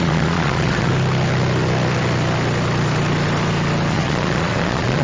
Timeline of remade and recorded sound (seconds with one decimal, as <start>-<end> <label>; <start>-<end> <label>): 0.0-0.9 remade; 0.9-3.9 recorded; 3.9-5.0 remade